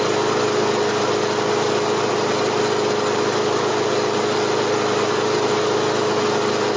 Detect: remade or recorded recorded